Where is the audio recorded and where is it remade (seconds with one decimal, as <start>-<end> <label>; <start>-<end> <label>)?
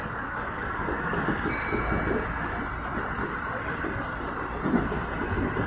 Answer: 0.0-1.9 remade; 1.9-5.7 recorded